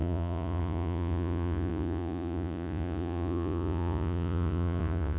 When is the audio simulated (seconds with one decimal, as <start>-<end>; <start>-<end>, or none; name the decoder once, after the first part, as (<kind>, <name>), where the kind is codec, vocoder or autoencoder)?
0.0-5.2 (vocoder, Vocos)